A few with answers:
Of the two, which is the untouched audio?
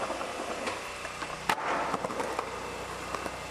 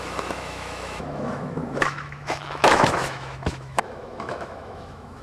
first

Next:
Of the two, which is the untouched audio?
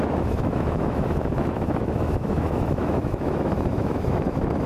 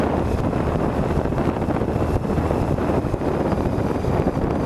second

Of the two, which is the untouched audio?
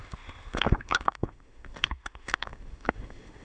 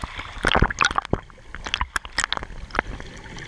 second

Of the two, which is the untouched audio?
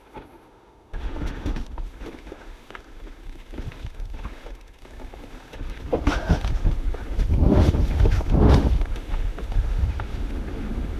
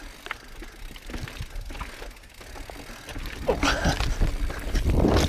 second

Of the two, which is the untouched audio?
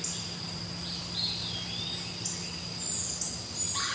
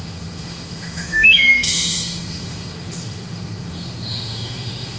first